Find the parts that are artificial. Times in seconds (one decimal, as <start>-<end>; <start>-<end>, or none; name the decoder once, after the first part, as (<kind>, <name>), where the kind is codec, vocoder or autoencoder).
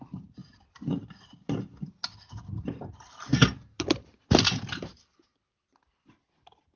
0.0-0.4 (vocoder, BigVGAN v2); 3.8-6.8